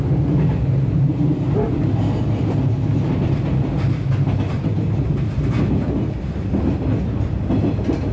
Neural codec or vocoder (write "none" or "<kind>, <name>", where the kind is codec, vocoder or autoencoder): none